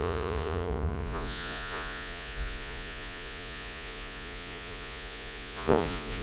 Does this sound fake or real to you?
fake